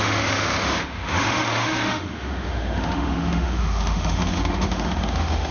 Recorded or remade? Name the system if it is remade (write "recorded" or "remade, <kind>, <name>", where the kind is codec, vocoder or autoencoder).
remade, autoencoder, DAC-VAE